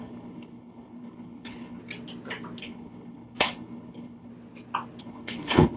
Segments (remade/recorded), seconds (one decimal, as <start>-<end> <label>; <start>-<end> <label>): 0.0-1.8 remade; 1.8-2.6 recorded; 2.6-4.3 remade; 4.3-5.0 recorded; 5.0-5.8 remade